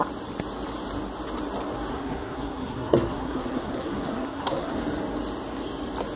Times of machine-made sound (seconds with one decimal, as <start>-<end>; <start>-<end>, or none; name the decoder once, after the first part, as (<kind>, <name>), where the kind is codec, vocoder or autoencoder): 1.9-4.7 (codec, SNAC)